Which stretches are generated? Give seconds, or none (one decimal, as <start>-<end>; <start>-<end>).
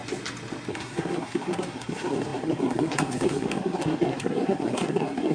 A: 0.7-5.3